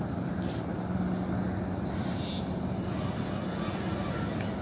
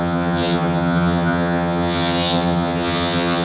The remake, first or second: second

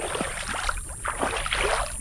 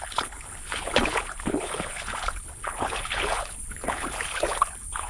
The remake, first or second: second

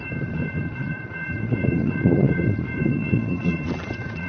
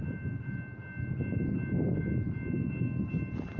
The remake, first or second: first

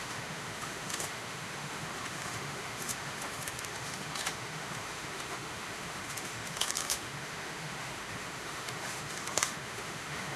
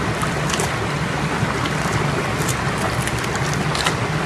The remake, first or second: first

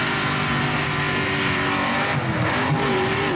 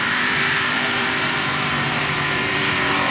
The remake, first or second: second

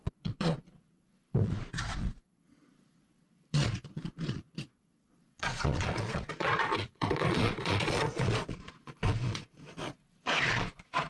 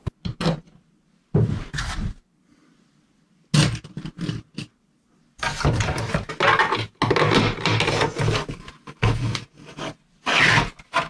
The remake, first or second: first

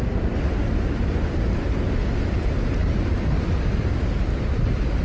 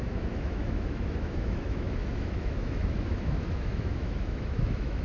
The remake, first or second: second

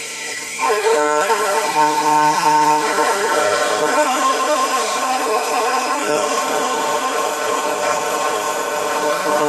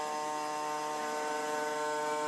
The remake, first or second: first